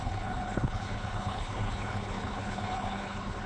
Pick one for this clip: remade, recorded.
remade